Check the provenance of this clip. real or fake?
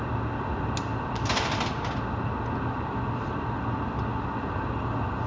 real